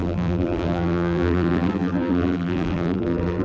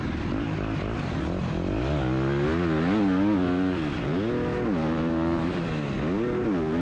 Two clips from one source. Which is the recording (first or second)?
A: second